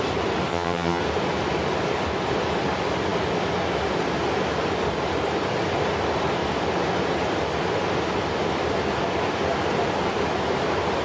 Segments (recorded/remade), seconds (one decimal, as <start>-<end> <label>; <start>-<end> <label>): 0.0-0.5 recorded; 0.5-1.0 remade; 1.0-11.0 recorded